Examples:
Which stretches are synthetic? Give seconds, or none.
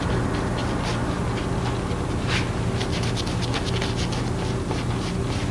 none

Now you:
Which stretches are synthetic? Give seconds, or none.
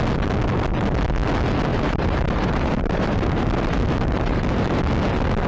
1.7-4.8 (vocoder, BigVGAN v2)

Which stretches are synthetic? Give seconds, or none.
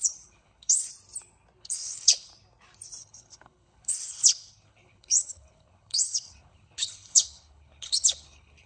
0.0-0.9 (codec, HILCodec); 1.6-2.3; 3.0-8.7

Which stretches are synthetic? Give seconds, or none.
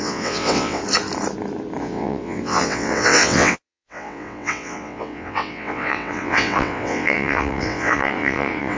0.0-0.8 (vocoder, WaveNeXt); 1.8-8.8